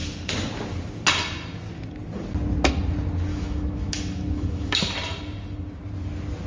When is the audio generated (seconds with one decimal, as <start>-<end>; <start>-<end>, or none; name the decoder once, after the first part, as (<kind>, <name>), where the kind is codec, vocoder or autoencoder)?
3.3-4.9 (autoencoder, DAC-VAE)